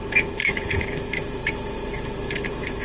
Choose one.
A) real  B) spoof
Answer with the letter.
B